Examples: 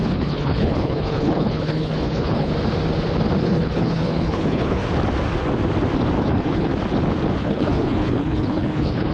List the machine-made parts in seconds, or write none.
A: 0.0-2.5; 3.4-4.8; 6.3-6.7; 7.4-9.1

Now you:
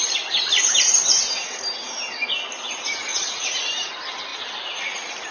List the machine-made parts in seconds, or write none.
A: 3.1-3.7

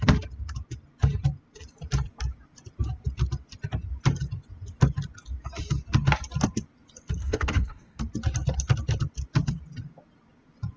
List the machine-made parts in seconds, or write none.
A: 7.2-8.0